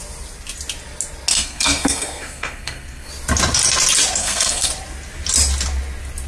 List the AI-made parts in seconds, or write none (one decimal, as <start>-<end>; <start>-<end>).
1.3-3.1; 4.2-4.7